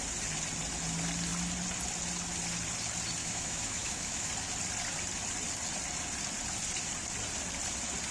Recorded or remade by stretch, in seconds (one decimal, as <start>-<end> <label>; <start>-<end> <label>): 0.0-3.2 recorded; 3.2-4.3 remade; 4.3-8.1 recorded